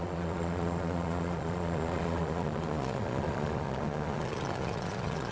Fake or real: fake